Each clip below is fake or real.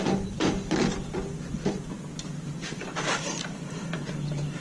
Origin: real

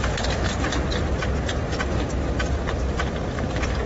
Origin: fake